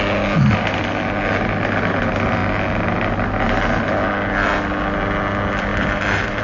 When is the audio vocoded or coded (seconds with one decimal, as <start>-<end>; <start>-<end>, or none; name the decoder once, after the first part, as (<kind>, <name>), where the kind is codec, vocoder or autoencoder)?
5.7-6.4 (vocoder, BigVGAN v2)